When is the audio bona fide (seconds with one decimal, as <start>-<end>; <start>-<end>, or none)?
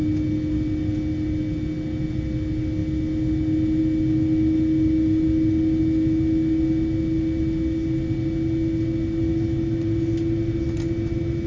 0.0-11.5